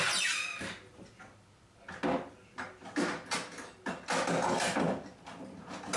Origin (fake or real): real